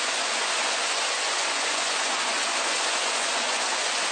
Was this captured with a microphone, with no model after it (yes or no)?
no